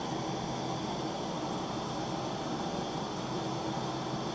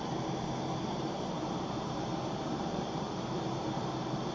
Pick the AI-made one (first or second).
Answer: second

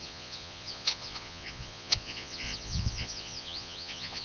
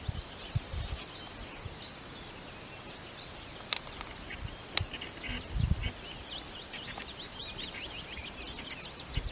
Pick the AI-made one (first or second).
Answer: first